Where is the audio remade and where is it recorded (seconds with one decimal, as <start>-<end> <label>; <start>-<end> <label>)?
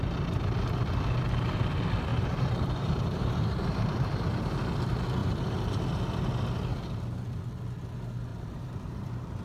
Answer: 0.0-2.1 recorded; 2.1-4.4 remade; 4.4-5.2 recorded; 5.2-5.8 remade; 5.8-8.3 recorded; 8.3-9.4 remade